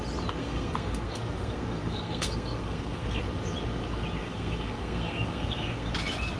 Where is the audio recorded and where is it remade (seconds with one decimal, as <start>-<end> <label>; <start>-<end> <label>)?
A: 0.0-0.4 recorded; 0.4-3.2 remade; 3.2-4.2 recorded; 4.2-5.9 remade; 5.9-6.4 recorded